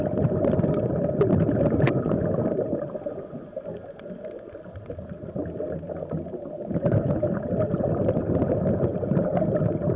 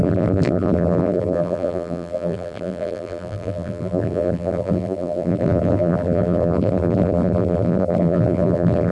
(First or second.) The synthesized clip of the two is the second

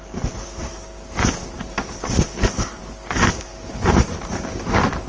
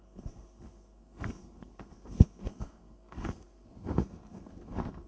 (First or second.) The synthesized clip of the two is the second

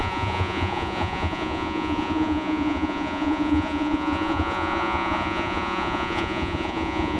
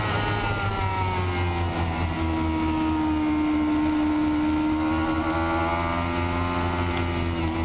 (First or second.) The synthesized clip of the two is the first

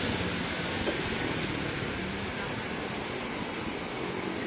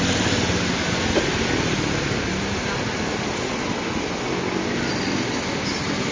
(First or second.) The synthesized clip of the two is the first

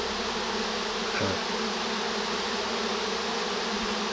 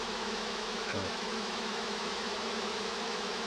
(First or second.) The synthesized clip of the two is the second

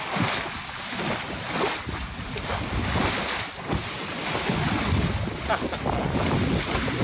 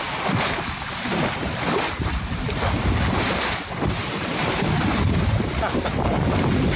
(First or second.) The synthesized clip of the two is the second